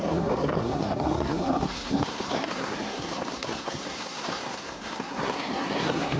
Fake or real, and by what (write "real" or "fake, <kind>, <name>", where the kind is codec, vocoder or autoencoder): fake, codec, SNAC